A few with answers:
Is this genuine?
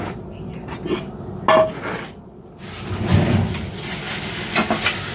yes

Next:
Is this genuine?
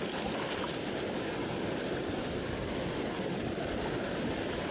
yes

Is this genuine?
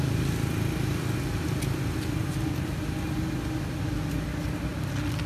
yes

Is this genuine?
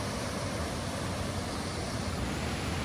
yes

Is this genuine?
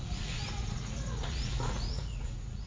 no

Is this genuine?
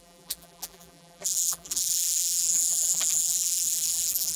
no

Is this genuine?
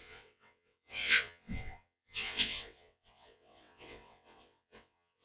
no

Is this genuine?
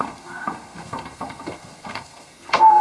no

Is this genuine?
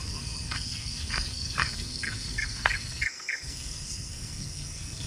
no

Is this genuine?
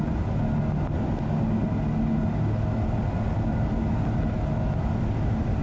yes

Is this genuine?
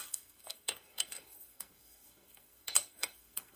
no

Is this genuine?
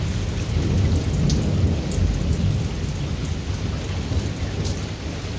yes